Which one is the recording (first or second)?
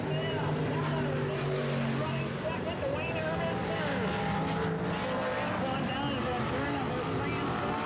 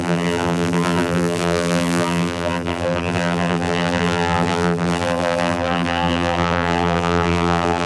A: first